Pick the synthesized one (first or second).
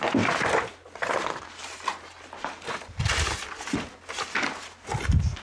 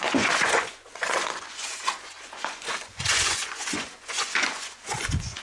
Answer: second